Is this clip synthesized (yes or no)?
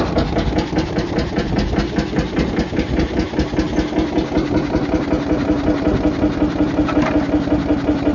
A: no